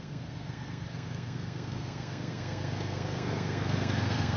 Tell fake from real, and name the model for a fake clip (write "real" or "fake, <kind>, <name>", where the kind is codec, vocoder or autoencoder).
fake, codec, SNAC